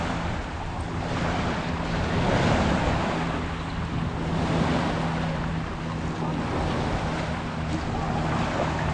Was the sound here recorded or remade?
recorded